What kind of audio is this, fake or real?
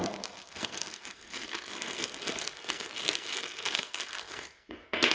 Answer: fake